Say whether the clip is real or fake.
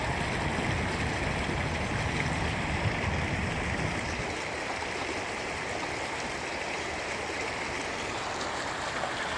real